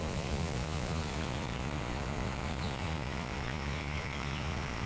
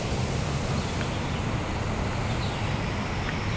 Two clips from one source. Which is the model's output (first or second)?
first